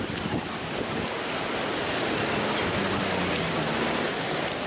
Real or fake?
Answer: real